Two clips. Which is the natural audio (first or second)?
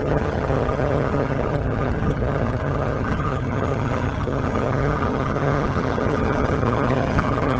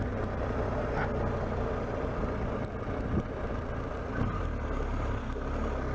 second